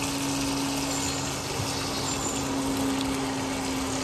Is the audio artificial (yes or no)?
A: no